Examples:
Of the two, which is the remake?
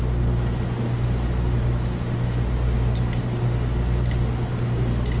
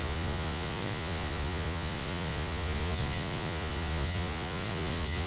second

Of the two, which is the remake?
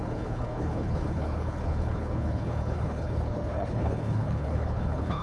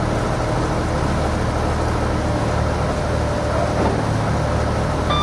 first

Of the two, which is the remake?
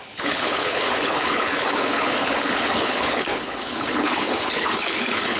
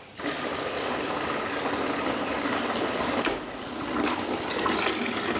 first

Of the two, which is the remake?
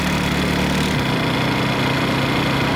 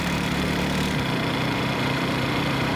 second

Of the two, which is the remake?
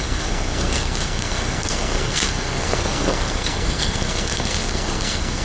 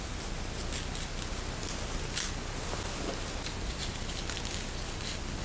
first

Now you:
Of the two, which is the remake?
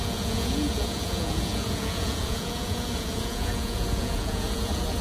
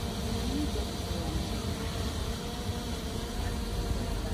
first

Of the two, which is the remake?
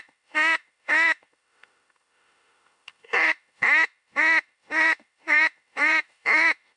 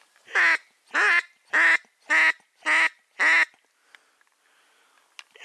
first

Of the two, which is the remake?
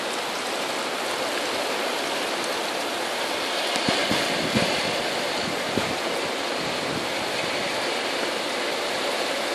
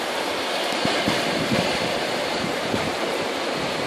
second